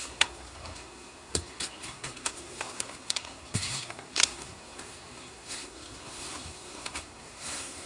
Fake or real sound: fake